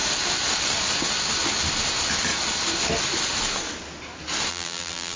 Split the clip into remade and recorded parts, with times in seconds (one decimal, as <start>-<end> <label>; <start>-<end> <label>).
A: 0.0-4.5 recorded; 4.5-5.2 remade